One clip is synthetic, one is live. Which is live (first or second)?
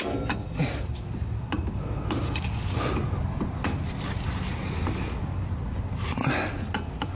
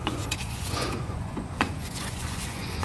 first